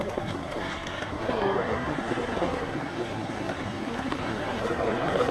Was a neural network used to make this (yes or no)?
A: yes